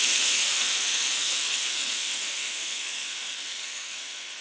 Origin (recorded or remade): remade